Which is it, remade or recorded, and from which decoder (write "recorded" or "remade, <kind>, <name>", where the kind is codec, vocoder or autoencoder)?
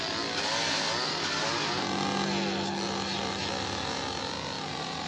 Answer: recorded